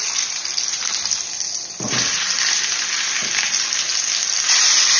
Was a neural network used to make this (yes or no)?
no